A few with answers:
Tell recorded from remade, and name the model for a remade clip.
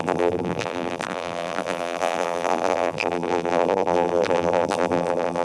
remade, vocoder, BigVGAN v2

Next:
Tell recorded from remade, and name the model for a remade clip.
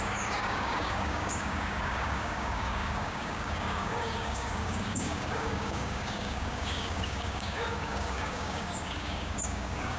remade, codec, DAC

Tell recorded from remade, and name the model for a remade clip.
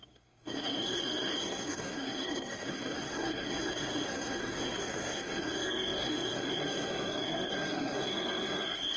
remade, codec, SNAC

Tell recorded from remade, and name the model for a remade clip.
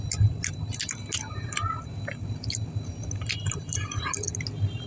recorded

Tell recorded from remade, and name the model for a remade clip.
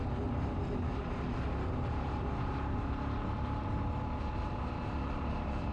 recorded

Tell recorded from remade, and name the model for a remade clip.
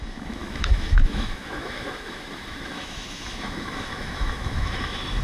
remade, autoencoder, DAC-VAE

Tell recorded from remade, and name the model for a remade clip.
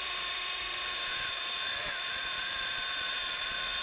remade, vocoder, Vocos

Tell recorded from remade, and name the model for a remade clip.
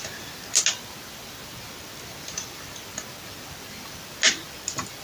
recorded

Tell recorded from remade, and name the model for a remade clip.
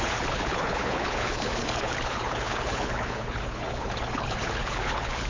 remade, codec, HILCodec